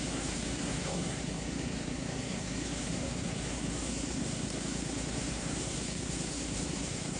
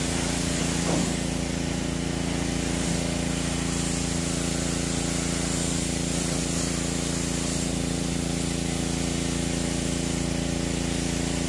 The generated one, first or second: first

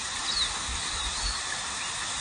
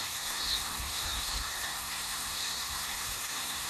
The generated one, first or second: second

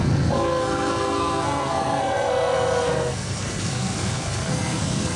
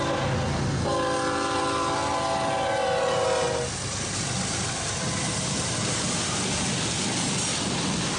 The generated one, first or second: first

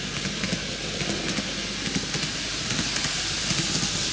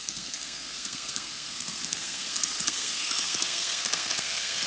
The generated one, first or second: second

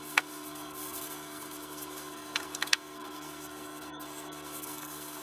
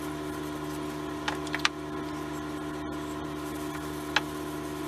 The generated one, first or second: first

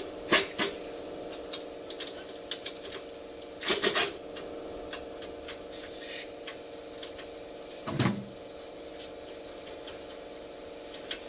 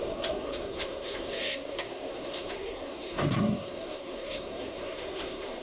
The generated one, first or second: second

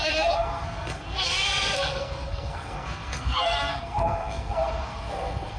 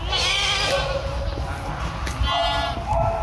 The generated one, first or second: first